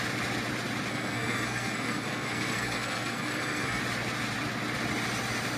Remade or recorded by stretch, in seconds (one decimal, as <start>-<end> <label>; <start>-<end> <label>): 0.0-0.9 recorded; 0.9-3.8 remade; 3.8-5.6 recorded